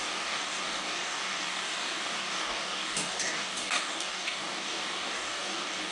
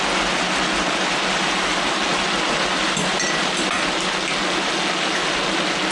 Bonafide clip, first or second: second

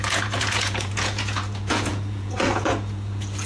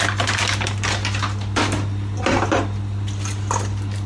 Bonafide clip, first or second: second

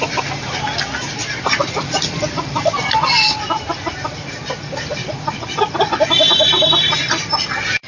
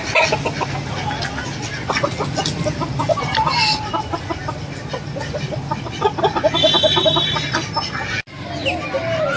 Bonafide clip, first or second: second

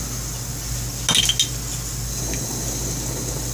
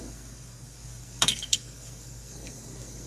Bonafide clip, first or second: first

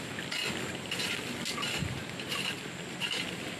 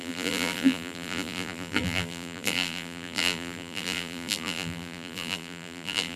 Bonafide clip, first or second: first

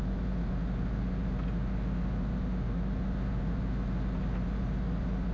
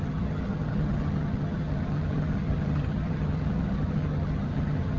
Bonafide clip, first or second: first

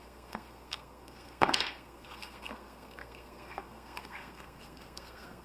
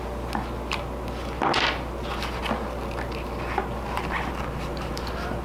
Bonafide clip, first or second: second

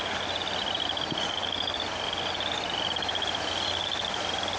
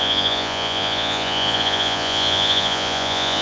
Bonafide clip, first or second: first